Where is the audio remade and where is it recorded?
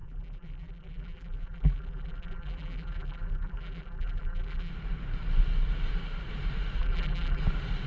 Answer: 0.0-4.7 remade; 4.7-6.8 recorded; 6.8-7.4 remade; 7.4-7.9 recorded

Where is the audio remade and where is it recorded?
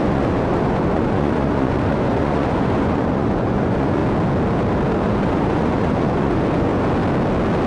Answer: 0.0-4.0 remade; 4.0-5.0 recorded; 5.0-6.7 remade; 6.7-7.7 recorded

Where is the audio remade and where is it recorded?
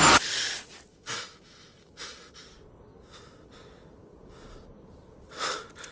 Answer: 0.0-0.9 recorded; 0.9-2.4 remade; 2.4-5.9 recorded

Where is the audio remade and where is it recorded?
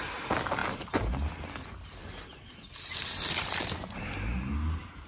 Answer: 0.0-0.6 recorded; 0.6-1.1 remade; 1.1-2.0 recorded; 2.0-4.5 remade; 4.5-5.1 recorded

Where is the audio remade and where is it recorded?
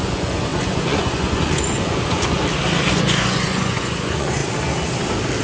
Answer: 0.0-2.4 remade; 2.4-2.9 recorded; 2.9-4.4 remade; 4.4-5.4 recorded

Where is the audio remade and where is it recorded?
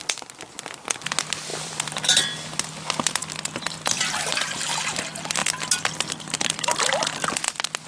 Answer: 0.0-1.5 recorded; 1.5-2.2 remade; 2.2-3.2 recorded; 3.2-4.8 remade; 4.8-7.9 recorded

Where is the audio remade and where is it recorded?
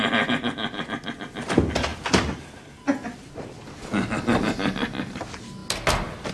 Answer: 0.0-6.3 recorded